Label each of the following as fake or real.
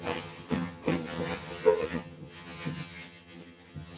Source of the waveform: fake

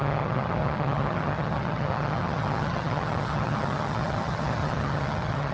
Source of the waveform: fake